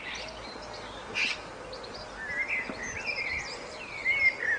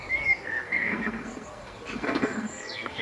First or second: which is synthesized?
second